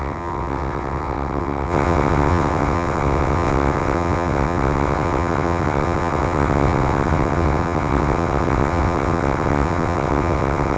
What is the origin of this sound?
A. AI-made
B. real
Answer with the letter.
A